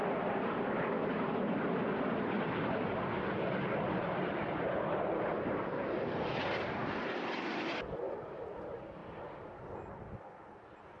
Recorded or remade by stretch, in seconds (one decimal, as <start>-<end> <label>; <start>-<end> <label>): 0.0-9.0 recorded; 9.0-9.9 remade; 9.9-11.0 recorded